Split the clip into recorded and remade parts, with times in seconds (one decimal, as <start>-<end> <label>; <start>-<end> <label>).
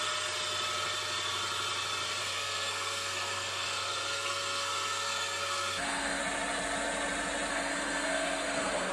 0.0-2.2 recorded; 2.2-6.2 remade; 6.2-7.5 recorded; 7.5-8.9 remade